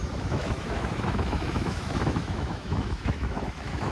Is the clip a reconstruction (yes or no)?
yes